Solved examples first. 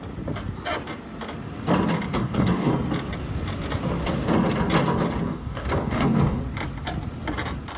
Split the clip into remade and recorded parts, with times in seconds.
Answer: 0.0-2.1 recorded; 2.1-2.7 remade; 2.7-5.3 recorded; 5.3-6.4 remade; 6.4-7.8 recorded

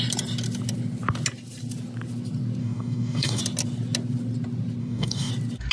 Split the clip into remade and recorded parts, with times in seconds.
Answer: 0.0-2.6 recorded; 2.6-3.4 remade; 3.4-4.8 recorded; 4.8-5.3 remade; 5.3-5.7 recorded